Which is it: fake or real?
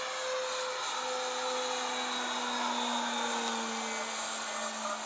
real